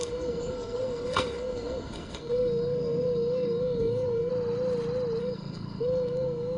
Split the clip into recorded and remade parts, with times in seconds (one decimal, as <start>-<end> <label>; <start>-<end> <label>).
0.0-4.3 remade; 4.3-5.2 recorded; 5.2-6.6 remade

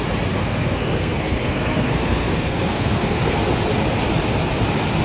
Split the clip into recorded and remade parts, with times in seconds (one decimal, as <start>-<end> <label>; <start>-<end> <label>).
0.0-0.4 recorded; 0.4-3.4 remade; 3.4-5.0 recorded

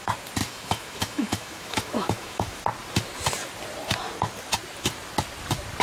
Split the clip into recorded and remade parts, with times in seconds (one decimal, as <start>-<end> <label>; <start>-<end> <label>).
0.0-0.4 recorded; 0.4-2.6 remade; 2.6-5.8 recorded

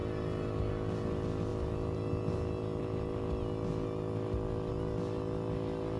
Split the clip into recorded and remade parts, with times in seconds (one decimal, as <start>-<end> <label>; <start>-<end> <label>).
0.0-6.0 recorded